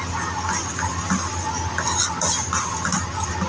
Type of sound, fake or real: real